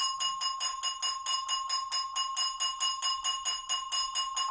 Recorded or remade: recorded